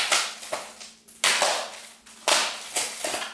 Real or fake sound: real